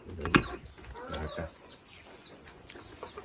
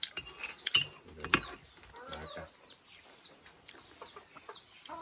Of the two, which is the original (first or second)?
second